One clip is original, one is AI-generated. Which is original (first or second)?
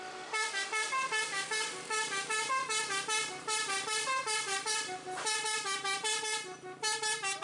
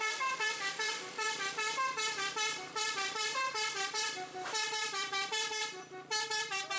first